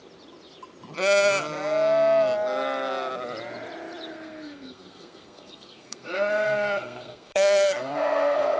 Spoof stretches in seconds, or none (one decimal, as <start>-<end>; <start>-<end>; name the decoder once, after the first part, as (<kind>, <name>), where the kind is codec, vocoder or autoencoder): 4.1-8.6 (codec, SNAC)